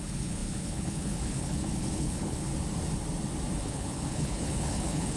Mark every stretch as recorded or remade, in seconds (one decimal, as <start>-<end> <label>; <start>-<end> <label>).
0.0-2.5 remade; 2.5-3.6 recorded; 3.6-5.2 remade